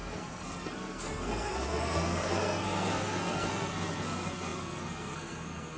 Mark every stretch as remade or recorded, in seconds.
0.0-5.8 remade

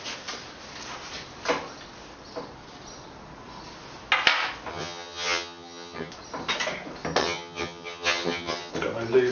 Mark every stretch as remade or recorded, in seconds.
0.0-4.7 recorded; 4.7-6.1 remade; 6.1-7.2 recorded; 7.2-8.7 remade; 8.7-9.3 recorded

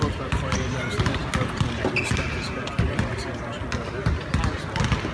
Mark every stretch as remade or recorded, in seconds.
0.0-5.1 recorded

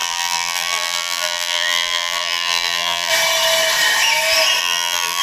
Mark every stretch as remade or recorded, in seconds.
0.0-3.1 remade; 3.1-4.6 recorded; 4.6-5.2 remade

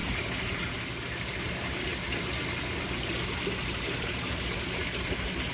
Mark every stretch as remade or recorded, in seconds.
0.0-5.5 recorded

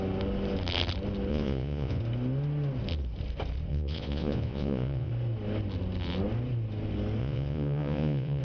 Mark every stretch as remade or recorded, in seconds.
0.0-1.3 recorded; 1.3-2.0 remade; 2.0-3.7 recorded; 3.7-5.1 remade; 5.1-7.2 recorded; 7.2-8.4 remade

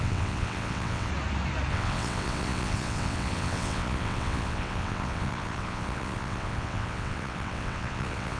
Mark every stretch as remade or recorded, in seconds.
0.0-1.1 remade; 1.1-1.7 recorded; 1.7-8.4 remade

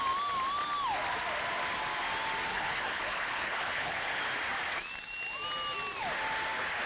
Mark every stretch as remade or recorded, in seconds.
0.0-2.5 recorded; 2.5-4.2 remade; 4.2-6.9 recorded